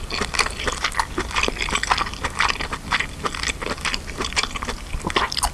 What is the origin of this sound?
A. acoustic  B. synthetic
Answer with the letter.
A